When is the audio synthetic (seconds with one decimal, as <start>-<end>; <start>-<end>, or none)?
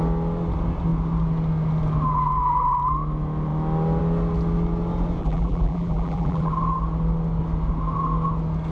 5.2-6.5